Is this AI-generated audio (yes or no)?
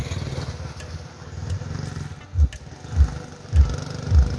no